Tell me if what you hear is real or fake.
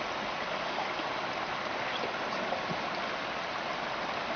real